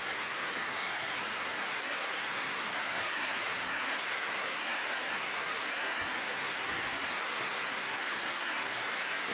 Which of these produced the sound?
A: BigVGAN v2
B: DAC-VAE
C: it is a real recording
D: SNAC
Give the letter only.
D